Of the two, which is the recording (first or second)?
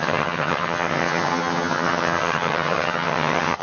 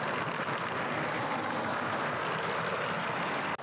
second